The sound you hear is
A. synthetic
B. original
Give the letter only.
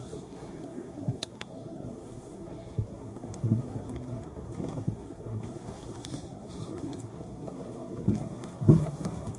A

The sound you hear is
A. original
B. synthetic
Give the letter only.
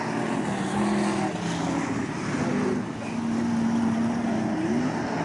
A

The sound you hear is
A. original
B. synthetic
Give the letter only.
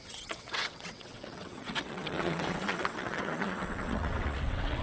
B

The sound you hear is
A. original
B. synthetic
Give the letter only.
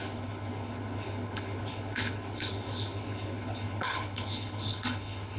B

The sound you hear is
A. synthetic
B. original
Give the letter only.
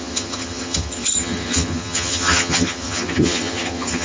A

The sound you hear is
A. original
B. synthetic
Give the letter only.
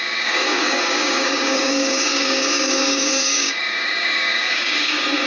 B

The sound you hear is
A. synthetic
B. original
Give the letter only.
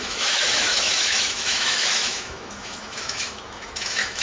A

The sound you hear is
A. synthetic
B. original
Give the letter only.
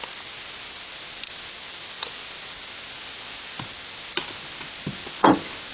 B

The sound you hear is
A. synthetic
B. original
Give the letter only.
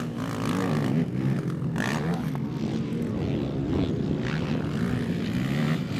B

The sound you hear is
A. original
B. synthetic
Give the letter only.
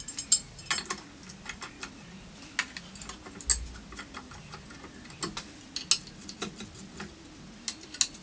A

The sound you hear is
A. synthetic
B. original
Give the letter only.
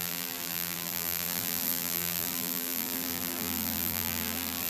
A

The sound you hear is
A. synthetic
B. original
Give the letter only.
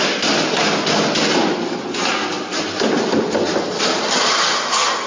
B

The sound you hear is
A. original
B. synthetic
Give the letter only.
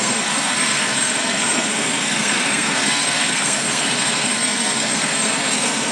B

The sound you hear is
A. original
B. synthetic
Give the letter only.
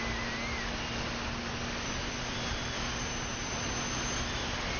A